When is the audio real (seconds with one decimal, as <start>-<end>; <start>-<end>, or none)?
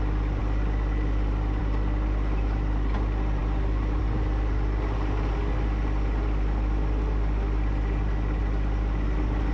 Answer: 0.0-9.5